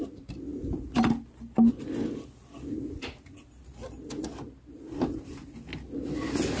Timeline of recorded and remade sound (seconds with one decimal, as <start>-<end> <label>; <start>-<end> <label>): 0.0-6.6 recorded